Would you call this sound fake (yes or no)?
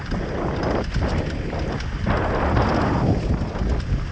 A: no